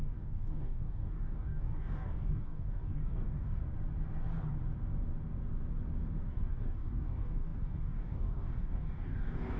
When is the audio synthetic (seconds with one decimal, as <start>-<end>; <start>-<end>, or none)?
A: 0.0-3.6; 6.3-9.6